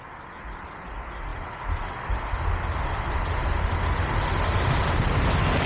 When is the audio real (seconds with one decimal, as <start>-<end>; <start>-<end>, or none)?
0.0-5.7